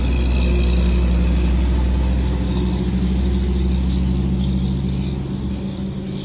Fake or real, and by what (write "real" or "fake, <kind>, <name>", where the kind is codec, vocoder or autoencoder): real